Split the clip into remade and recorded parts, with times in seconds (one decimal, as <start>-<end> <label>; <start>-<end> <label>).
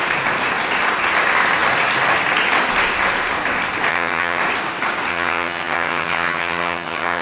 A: 0.0-3.9 recorded; 3.9-4.4 remade; 4.4-5.1 recorded; 5.1-7.2 remade